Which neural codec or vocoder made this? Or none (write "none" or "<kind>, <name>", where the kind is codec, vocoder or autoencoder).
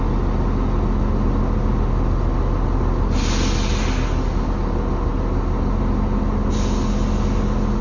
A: none